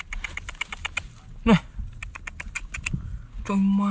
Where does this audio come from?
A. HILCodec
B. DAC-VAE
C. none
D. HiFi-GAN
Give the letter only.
C